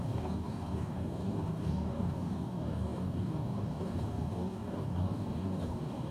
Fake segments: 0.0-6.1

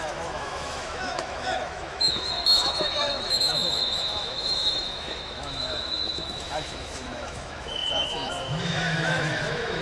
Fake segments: 0.0-9.8

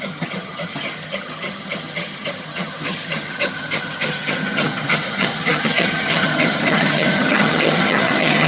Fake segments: 0.0-8.5

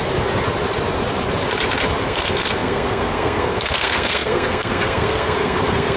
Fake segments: 2.0-6.0

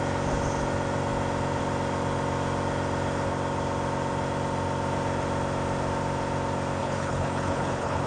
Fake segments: 6.8-8.1